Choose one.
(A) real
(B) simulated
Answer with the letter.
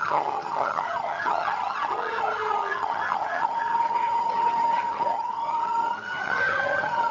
B